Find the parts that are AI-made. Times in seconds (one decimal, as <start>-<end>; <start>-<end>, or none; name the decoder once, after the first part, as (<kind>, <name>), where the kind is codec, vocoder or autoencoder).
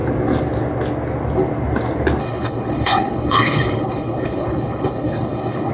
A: 2.2-5.7 (codec, HILCodec)